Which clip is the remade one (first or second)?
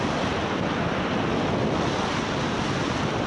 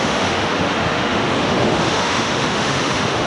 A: second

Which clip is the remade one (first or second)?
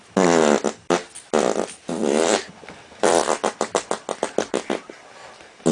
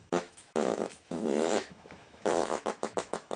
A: second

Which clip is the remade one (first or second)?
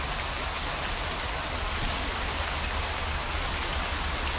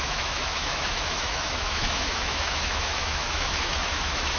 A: second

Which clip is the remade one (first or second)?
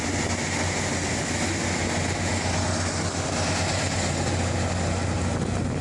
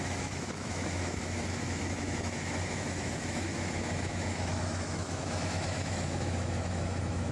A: second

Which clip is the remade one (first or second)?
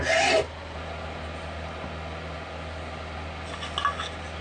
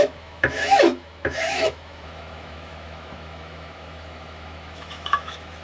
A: second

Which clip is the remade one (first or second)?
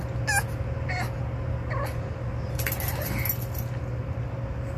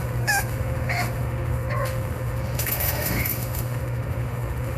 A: second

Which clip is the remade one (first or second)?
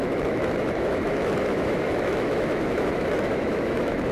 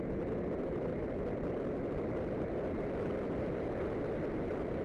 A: first